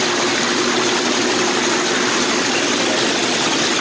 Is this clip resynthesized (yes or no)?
no